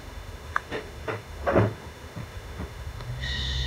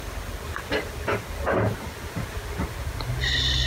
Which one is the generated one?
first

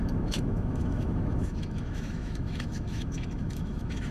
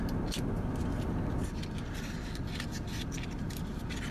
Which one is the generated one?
first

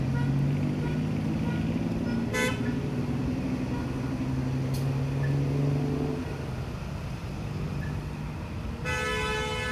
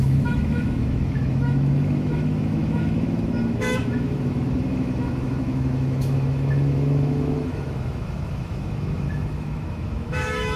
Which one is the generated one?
second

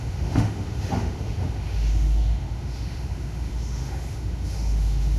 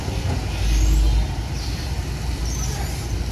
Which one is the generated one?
first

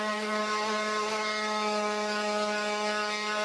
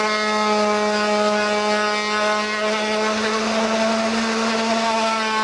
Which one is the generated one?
first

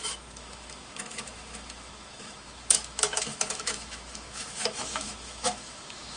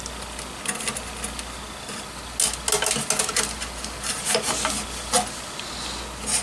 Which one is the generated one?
first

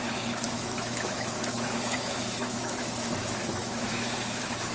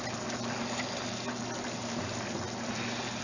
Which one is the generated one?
first